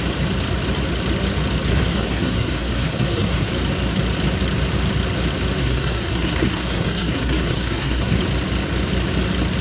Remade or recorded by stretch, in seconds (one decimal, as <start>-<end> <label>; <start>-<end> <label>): 0.0-1.7 recorded; 1.7-3.5 remade; 3.5-5.6 recorded; 5.6-8.2 remade; 8.2-9.6 recorded